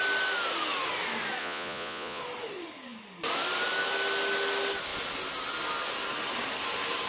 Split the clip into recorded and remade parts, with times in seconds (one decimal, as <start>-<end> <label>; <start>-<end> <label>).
0.0-1.4 recorded; 1.4-2.2 remade; 2.2-7.1 recorded